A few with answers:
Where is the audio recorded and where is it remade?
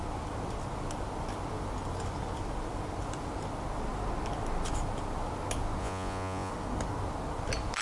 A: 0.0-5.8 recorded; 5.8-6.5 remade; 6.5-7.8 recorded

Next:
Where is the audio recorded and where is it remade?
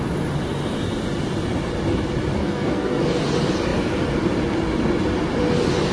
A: 0.0-2.4 recorded; 2.4-3.0 remade; 3.0-5.9 recorded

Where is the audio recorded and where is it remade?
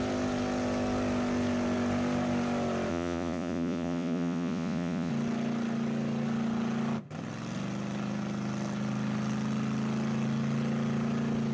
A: 0.0-2.9 recorded; 2.9-5.1 remade; 5.1-11.5 recorded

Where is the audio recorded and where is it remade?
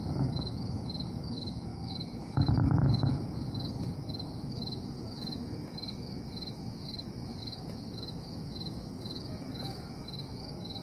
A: 0.0-10.8 remade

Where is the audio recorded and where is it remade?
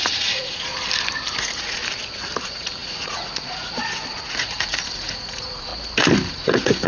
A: 0.0-0.7 remade; 0.7-1.4 recorded; 1.4-1.8 remade; 1.8-2.4 recorded; 2.4-5.7 remade; 5.7-6.3 recorded; 6.3-6.9 remade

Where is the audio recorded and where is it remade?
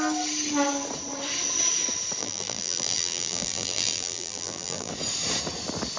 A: 0.0-2.2 recorded; 2.2-4.9 remade; 4.9-6.0 recorded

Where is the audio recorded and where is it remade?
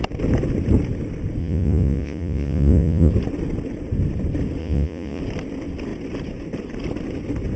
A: 0.0-1.4 recorded; 1.4-3.1 remade; 3.1-4.6 recorded; 4.6-5.2 remade; 5.2-7.6 recorded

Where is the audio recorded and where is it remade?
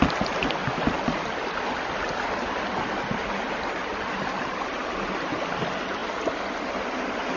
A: 0.0-7.4 recorded